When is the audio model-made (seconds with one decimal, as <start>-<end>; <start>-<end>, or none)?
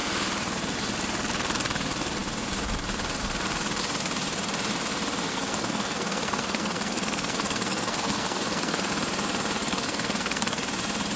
5.3-8.9; 9.6-10.6